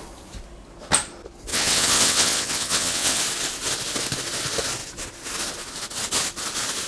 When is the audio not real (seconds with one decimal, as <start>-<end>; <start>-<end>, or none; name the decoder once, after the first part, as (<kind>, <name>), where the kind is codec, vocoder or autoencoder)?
1.5-3.2 (vocoder, WaveNeXt)